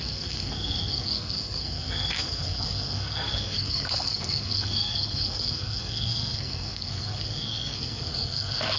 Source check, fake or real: fake